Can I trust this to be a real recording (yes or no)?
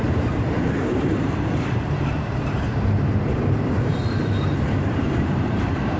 no